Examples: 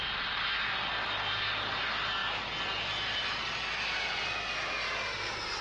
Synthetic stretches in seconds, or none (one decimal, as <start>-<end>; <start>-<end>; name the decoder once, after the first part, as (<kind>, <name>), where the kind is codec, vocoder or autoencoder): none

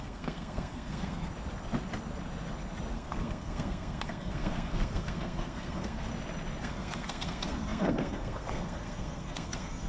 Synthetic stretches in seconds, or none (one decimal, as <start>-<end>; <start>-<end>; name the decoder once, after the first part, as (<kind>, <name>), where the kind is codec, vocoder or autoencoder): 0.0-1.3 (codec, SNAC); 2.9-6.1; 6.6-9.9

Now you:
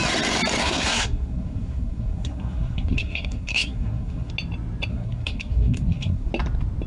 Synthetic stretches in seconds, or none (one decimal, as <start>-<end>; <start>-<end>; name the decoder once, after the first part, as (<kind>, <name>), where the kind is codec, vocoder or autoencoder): 0.6-4.3 (codec, SNAC); 4.9-6.3